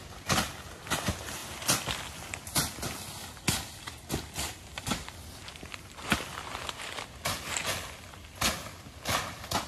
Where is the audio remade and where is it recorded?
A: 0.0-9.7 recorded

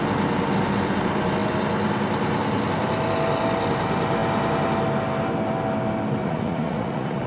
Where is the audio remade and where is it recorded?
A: 0.0-6.2 recorded; 6.2-7.3 remade

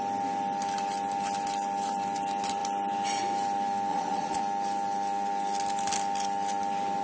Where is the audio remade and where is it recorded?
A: 0.0-3.9 recorded; 3.9-4.4 remade; 4.4-7.0 recorded

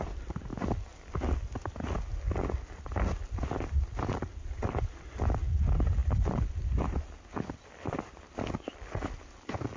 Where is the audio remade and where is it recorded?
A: 0.0-9.8 recorded

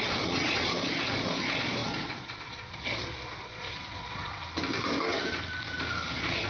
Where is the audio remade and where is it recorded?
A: 0.0-4.4 remade; 4.4-6.1 recorded; 6.1-6.5 remade

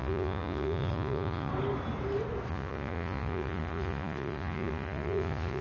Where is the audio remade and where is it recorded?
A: 0.0-1.5 remade; 1.5-2.5 recorded; 2.5-5.6 remade